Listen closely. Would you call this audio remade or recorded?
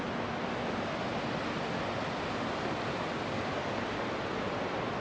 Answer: recorded